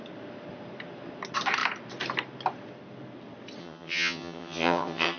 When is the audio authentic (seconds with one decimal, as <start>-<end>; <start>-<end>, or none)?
0.0-3.6